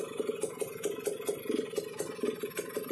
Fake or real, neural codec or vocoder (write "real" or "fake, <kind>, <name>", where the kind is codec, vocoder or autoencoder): real